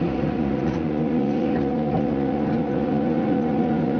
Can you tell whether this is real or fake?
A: fake